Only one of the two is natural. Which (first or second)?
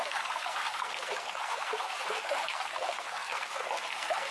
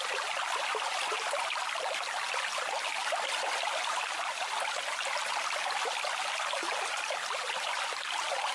second